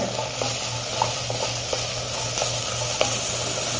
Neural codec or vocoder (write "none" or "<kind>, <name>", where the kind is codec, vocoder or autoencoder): none